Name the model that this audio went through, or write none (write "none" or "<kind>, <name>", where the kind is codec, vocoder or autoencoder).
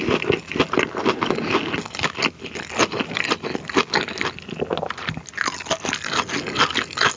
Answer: none